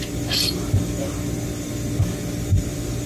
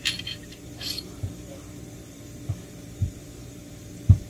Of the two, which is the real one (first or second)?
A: first